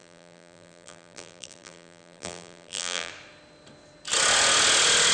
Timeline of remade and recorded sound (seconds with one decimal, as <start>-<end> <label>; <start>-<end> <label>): 0.0-3.1 remade; 3.1-5.1 recorded